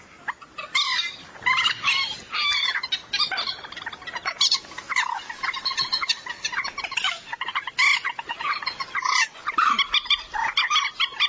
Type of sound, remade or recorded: recorded